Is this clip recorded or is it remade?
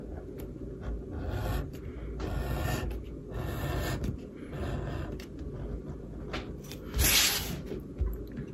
recorded